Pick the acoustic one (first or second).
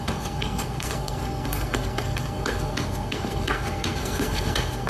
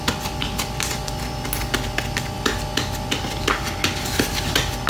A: second